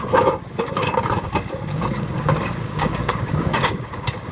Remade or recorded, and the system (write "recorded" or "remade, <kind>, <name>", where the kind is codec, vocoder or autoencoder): remade, codec, DAC